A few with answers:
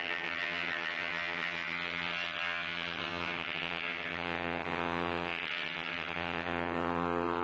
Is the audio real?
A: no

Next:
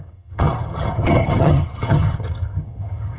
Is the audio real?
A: no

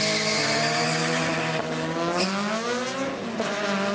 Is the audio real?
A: yes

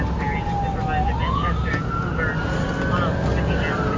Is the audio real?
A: yes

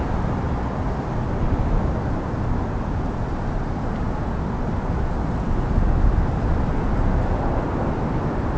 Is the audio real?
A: yes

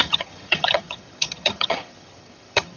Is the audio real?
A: no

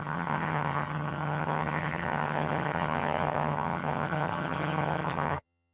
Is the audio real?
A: no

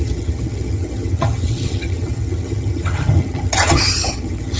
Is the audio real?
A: no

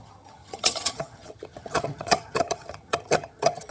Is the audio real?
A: no